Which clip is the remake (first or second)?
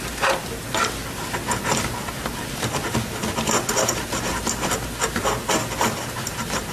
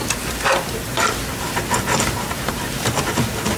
second